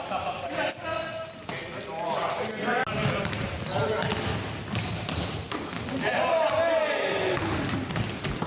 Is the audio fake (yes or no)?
no